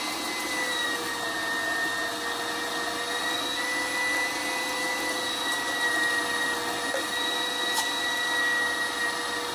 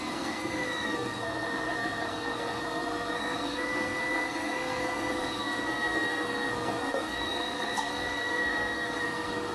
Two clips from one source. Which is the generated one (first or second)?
second